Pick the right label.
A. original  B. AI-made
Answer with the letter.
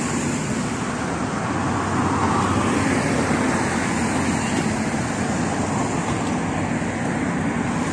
A